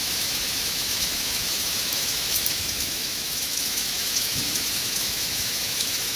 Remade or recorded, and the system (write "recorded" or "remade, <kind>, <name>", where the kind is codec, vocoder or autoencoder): remade, autoencoder, DAC-VAE